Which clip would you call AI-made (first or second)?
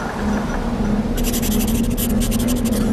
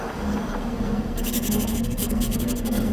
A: second